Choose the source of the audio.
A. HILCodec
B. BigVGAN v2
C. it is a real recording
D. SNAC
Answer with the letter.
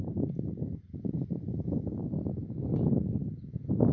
C